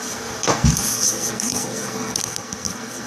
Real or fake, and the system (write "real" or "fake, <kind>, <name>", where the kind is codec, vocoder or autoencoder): fake, codec, SNAC